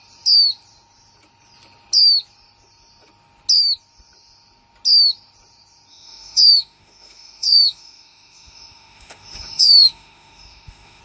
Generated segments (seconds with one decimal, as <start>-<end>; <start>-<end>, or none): 5.9-11.0